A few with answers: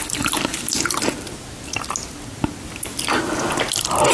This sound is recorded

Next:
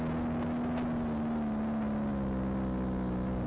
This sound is recorded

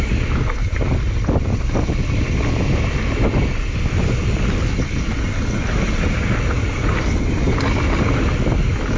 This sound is recorded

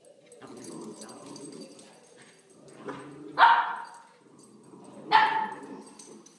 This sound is recorded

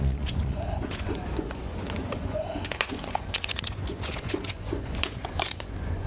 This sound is remade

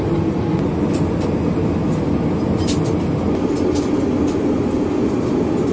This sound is recorded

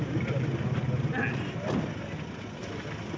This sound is recorded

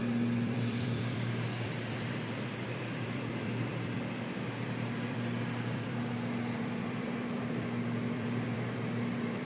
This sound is remade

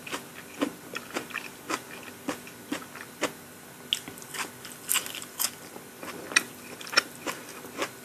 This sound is recorded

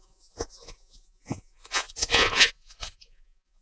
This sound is remade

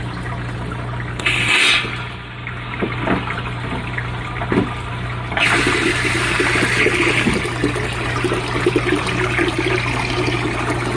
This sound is remade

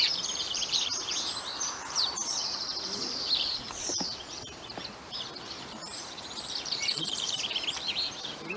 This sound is remade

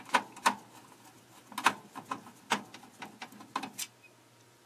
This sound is recorded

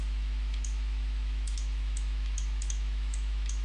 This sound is remade